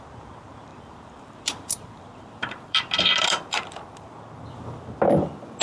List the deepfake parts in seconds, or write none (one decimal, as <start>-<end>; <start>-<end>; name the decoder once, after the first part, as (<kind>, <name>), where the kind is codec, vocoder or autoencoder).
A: 0.7-4.1 (vocoder, BigVGAN v2)